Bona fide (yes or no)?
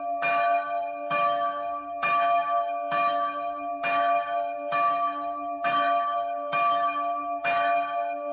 no